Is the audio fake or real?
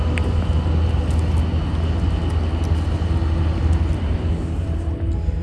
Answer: real